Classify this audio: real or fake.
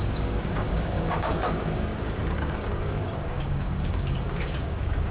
fake